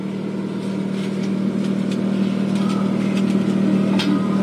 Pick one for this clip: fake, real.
real